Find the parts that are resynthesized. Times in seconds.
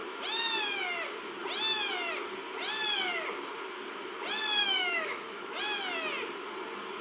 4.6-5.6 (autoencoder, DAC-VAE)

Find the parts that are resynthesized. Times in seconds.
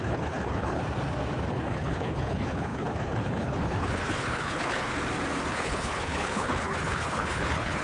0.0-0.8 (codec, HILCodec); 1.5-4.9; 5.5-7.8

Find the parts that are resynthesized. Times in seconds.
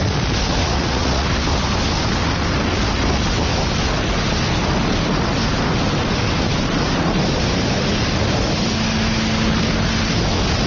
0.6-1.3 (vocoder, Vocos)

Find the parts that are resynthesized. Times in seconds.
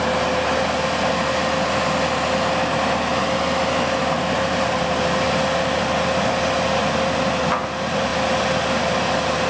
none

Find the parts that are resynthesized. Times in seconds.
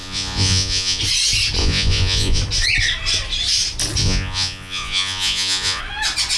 0.0-1.0 (vocoder, Vocos); 1.6-2.4; 4.0-5.8